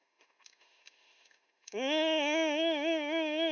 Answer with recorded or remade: remade